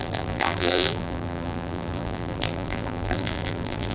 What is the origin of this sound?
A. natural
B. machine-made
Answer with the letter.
B